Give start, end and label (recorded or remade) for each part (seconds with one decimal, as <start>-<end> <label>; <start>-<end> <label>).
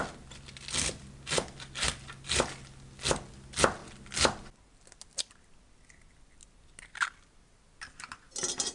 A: 0.0-8.7 recorded